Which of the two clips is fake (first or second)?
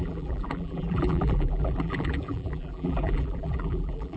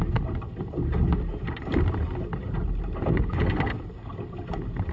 first